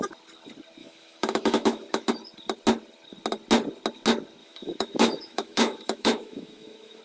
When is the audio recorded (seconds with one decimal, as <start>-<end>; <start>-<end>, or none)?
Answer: 0.0-0.8; 2.1-4.4

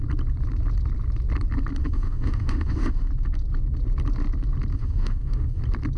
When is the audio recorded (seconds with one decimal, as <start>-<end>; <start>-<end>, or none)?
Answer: 0.0-1.8; 3.1-4.7; 5.6-6.0

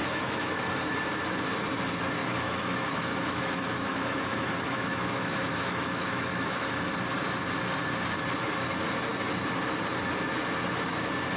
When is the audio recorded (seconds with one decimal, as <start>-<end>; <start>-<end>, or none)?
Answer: 0.6-2.2; 6.9-11.4

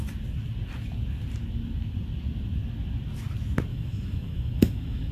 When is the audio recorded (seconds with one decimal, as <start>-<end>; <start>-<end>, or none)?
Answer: 0.0-3.7

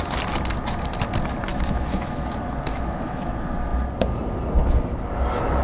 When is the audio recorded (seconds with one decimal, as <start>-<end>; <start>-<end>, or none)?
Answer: 0.0-1.5; 2.3-2.7; 3.3-5.6

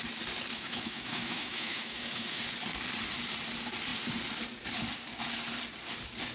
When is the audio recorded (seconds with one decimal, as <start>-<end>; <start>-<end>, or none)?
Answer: 0.0-0.5; 2.4-6.3

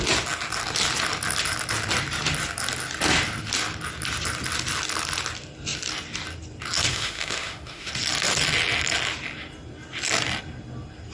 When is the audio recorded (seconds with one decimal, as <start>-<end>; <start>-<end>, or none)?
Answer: 0.0-6.9; 7.9-11.1

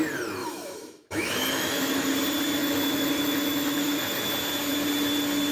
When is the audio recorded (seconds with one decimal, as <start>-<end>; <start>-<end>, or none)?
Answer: 0.0-0.4; 2.1-2.6; 4.3-5.5